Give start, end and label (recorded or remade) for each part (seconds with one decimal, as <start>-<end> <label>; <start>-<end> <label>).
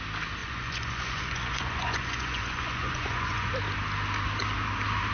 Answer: 0.0-0.4 recorded; 0.4-3.5 remade; 3.5-5.1 recorded